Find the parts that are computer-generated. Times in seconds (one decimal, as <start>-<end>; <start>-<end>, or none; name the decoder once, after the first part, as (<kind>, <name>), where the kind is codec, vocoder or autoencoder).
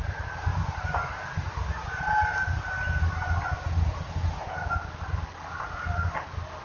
none